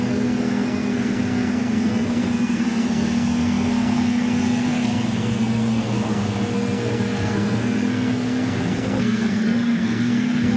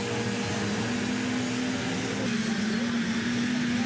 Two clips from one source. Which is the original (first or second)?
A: second